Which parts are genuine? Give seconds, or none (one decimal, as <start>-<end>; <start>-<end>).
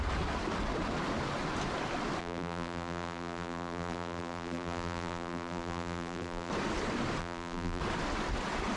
0.0-2.2; 6.5-7.2; 7.8-8.8